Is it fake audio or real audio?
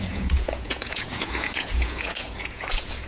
fake